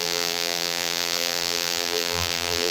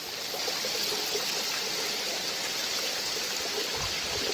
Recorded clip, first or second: second